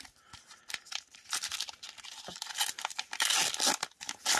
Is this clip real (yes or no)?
yes